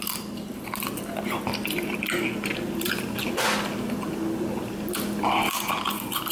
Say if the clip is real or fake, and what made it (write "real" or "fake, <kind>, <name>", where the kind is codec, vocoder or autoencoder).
real